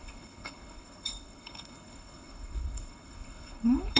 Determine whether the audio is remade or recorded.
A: remade